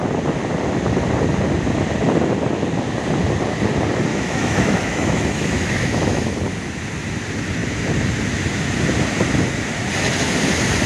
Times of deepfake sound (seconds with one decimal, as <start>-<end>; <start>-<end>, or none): 4.1-6.4